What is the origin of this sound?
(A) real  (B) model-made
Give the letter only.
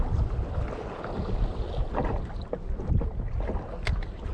A